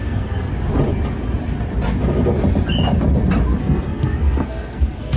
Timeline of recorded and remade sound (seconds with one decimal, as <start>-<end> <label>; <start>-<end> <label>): 0.0-0.5 remade; 0.5-3.6 recorded; 3.6-5.2 remade